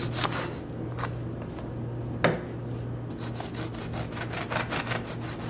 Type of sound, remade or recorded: recorded